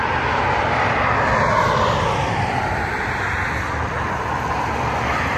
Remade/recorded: recorded